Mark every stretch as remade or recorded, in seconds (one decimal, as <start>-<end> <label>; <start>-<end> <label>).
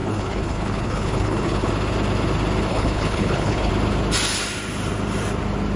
0.0-1.7 remade; 1.7-2.7 recorded; 2.7-3.7 remade; 3.7-5.8 recorded